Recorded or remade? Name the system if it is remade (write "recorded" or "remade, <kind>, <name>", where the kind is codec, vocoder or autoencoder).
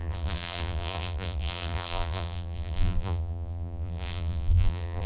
remade, vocoder, BigVGAN v2